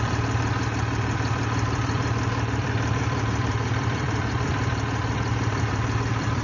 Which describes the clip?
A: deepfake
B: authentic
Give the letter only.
A